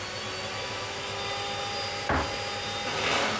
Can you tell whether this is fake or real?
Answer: real